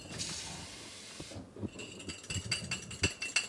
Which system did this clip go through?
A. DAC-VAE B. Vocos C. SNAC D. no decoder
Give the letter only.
D